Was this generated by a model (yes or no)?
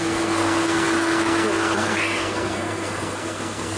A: yes